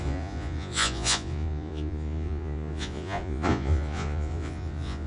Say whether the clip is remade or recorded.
remade